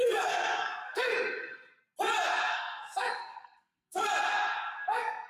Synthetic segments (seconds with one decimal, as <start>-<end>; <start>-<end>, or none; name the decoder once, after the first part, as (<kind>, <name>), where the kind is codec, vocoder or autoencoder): 0.0-1.1 (codec, SNAC); 2.4-4.1; 4.7-5.3